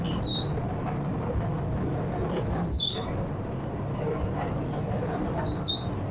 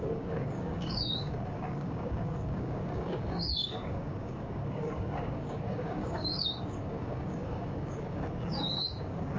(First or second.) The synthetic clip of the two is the second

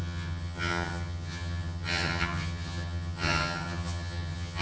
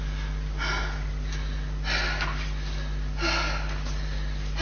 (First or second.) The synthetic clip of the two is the first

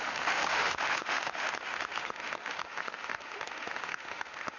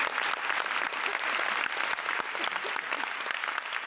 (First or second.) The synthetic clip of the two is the first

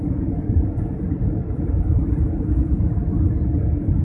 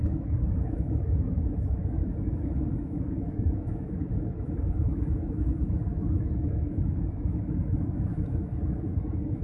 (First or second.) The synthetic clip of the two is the second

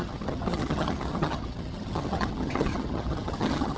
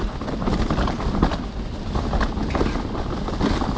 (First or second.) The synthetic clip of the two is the first